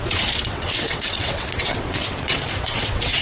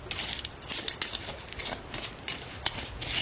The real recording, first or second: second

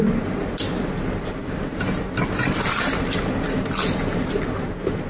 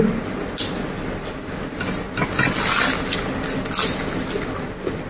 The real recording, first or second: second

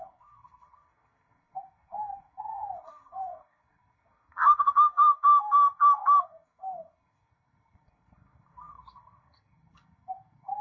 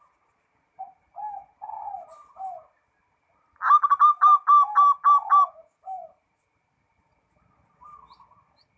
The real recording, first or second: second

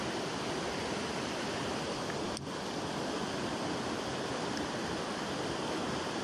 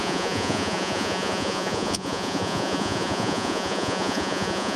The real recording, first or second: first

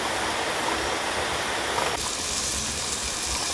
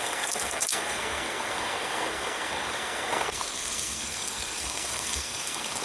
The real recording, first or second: first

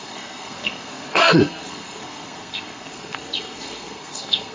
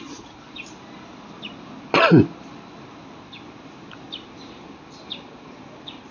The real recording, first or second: second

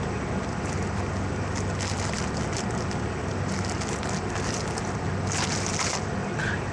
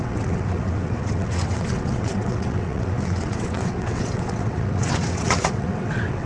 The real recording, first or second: first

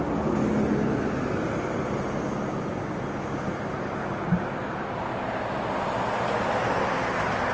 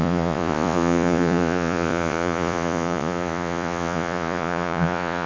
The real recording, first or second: first